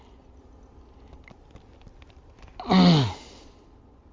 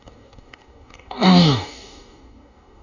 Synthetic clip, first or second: second